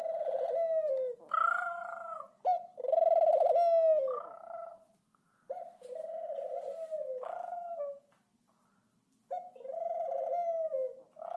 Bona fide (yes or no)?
yes